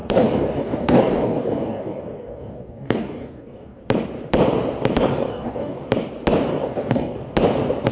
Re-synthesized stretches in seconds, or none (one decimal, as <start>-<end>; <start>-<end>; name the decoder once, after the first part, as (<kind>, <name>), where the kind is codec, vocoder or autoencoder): 0.0-3.8 (codec, DAC); 5.1-5.8; 6.5-7.2

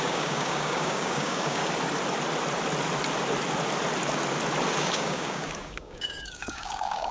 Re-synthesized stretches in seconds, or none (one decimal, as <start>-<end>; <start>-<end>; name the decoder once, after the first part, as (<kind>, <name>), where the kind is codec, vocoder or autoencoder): 0.0-1.6 (codec, DAC); 4.8-7.1

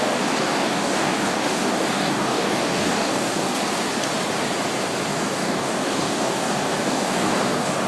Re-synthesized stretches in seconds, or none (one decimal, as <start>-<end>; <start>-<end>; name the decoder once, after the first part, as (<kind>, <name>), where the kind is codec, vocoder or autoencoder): 0.0-3.6 (codec, DAC); 5.1-7.9